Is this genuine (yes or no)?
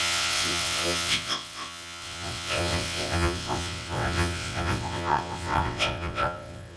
no